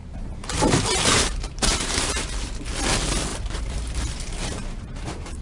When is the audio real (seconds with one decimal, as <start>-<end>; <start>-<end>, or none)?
2.6-3.3